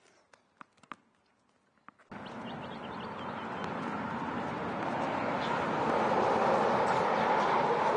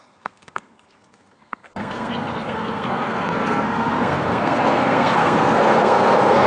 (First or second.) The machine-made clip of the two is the second